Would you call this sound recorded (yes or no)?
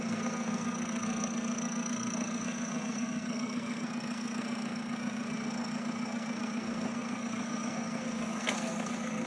no